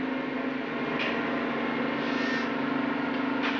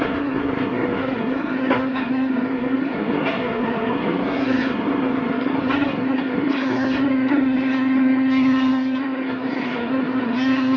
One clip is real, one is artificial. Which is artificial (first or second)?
second